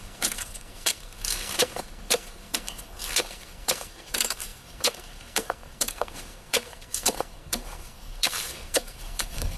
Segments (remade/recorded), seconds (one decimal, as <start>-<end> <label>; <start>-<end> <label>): 0.0-9.6 remade